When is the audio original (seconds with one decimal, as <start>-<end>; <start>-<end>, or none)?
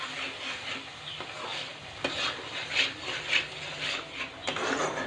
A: 0.0-5.1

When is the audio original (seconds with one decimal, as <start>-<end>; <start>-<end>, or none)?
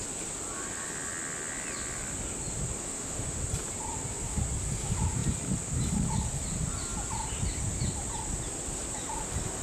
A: 0.0-2.8; 3.4-9.6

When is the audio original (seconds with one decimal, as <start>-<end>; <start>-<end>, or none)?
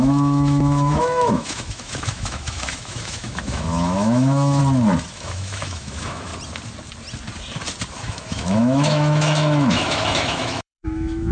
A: 4.6-5.1; 6.3-8.0